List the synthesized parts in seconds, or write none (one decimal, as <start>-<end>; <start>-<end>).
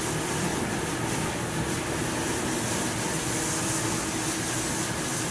none